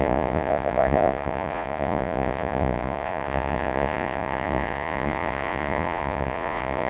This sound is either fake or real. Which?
fake